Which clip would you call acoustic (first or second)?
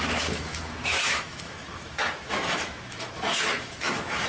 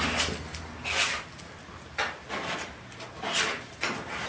second